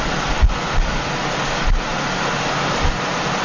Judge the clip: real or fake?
real